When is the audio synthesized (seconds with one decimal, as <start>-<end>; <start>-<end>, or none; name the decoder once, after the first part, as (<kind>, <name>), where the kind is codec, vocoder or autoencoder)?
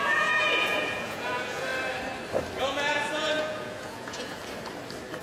0.0-1.7 (vocoder, Vocos); 2.6-4.4